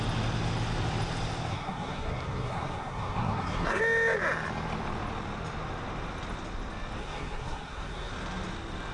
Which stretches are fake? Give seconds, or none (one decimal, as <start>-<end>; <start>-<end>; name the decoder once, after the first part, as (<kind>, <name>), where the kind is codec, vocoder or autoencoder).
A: 1.5-3.8 (codec, SNAC); 7.0-8.1